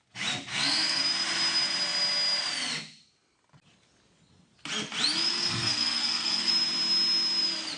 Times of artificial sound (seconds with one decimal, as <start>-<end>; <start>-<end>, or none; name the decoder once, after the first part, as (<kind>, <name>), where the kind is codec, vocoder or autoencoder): 0.5-1.0 (codec, SNAC); 5.3-6.5